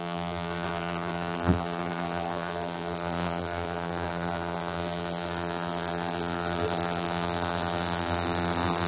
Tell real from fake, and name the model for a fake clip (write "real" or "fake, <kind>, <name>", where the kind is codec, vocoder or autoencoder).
fake, vocoder, BigVGAN v2